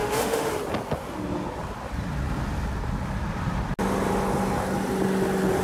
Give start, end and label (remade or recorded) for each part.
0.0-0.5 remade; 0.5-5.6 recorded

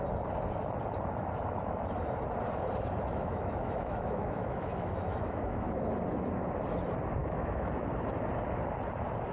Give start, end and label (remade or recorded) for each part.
0.0-3.1 recorded; 3.1-5.9 remade; 5.9-7.2 recorded; 7.2-7.8 remade; 7.8-9.3 recorded

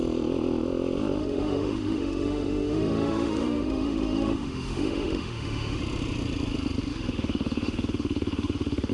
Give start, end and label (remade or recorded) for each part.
0.0-1.2 recorded; 1.2-5.8 remade; 5.8-6.9 recorded; 6.9-8.9 remade

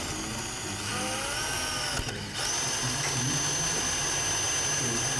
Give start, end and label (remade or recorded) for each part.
0.0-5.2 recorded

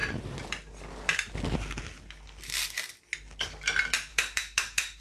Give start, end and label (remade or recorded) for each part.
0.0-4.1 recorded; 4.1-5.0 remade

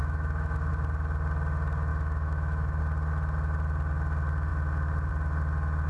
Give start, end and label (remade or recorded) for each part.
0.0-0.7 remade; 0.7-1.9 recorded; 1.9-2.8 remade; 2.8-5.9 recorded

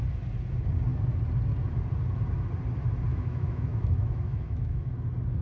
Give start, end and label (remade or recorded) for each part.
0.0-3.1 recorded; 3.1-4.9 remade; 4.9-5.4 recorded